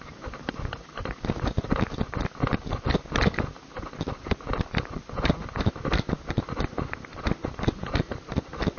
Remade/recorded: recorded